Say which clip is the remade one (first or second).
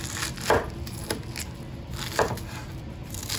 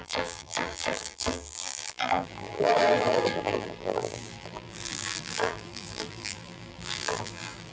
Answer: second